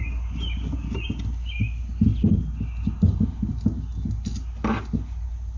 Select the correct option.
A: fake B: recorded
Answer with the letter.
B